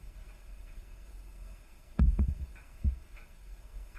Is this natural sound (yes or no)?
no